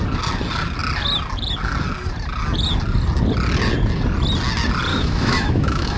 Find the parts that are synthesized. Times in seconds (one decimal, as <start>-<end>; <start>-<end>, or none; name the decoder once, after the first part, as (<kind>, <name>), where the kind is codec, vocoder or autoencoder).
4.9-6.0 (autoencoder, DAC-VAE)